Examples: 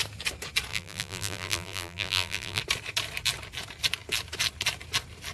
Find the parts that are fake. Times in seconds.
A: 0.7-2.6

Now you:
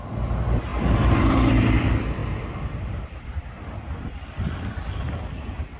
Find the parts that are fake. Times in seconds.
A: 0.7-1.5; 2.2-4.7

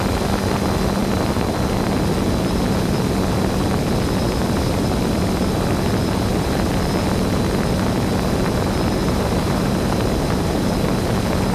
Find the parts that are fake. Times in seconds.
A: 9.0-10.7

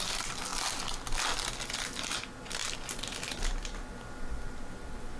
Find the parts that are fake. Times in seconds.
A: none

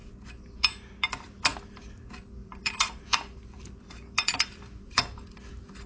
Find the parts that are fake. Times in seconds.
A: 2.4-5.5

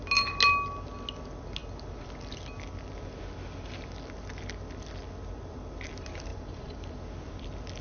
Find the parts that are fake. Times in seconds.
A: 6.3-7.0